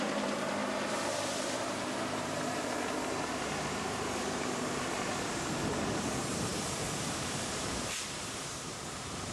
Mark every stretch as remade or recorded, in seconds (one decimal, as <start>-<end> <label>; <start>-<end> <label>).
0.0-0.6 remade; 0.6-1.6 recorded; 1.6-9.3 remade